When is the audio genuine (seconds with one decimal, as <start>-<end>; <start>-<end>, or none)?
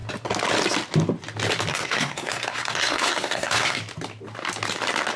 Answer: 0.0-1.7; 3.8-5.2